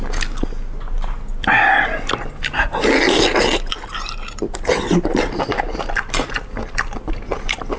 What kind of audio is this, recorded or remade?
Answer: recorded